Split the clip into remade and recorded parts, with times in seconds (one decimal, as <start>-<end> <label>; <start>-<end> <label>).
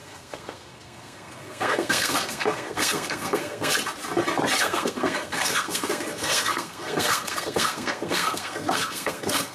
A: 0.0-3.7 remade; 3.7-4.6 recorded; 4.6-9.5 remade